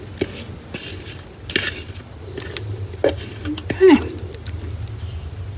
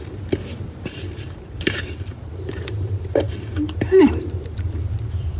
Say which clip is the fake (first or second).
second